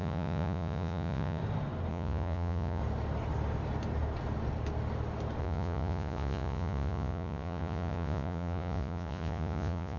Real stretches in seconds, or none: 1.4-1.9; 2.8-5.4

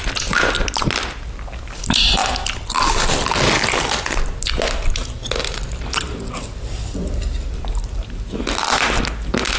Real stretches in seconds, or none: 0.0-9.6